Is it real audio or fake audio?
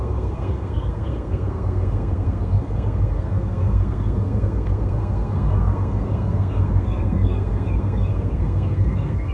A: fake